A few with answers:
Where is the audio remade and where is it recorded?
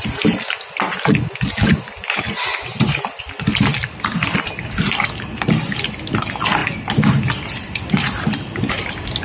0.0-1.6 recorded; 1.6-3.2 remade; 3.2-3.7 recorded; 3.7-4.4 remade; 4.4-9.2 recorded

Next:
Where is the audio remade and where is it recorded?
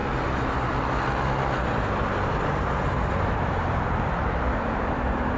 0.0-3.2 recorded; 3.2-5.4 remade